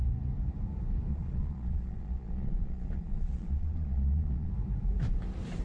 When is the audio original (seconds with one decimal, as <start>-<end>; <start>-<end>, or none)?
0.0-1.1; 4.5-5.6

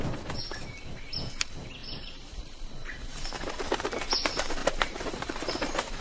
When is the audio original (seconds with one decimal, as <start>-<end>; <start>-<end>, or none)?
0.0-1.8; 3.3-4.6

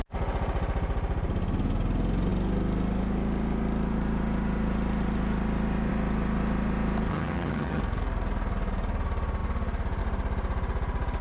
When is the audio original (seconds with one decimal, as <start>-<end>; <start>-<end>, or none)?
0.0-7.1; 7.8-11.2

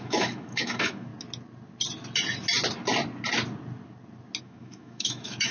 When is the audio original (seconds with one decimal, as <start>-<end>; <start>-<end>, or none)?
1.1-4.4

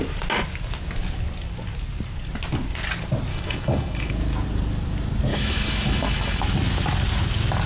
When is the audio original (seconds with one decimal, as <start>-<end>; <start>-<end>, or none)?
0.0-3.3; 4.1-5.3; 6.4-7.7

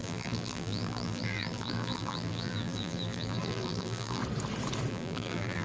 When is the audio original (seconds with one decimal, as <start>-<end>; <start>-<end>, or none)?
4.2-4.9

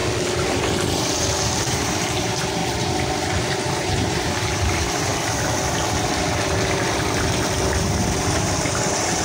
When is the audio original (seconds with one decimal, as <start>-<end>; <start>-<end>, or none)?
0.0-1.0; 2.6-3.5; 5.1-7.8